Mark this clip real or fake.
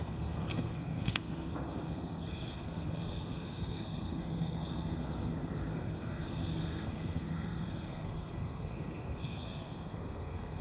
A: fake